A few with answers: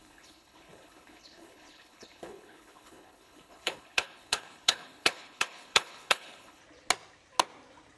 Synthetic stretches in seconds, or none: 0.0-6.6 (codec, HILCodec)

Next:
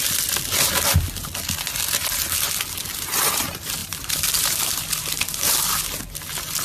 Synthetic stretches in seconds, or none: 3.8-4.8 (vocoder, BigVGAN v2)

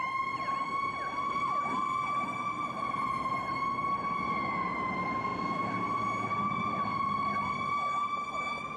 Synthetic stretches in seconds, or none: none

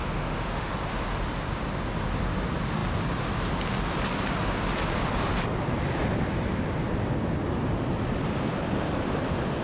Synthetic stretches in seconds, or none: 0.0-0.7 (autoencoder, DAC-VAE)

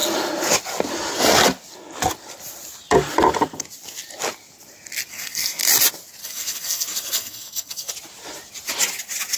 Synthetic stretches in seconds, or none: 5.1-5.6 (codec, SNAC); 6.2-7.9